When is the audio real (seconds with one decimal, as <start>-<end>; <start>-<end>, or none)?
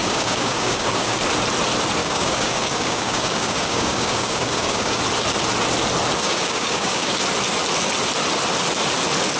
1.2-2.0; 5.0-6.2; 7.2-9.4